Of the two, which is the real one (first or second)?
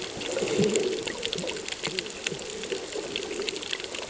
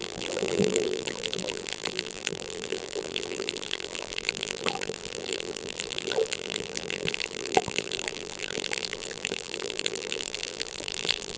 first